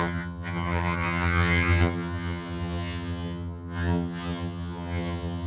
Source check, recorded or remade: remade